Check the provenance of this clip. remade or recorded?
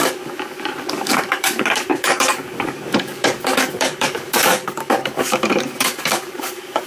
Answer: remade